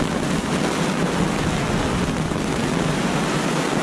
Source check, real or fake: real